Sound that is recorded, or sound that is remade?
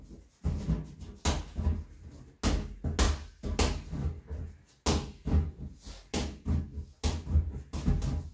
recorded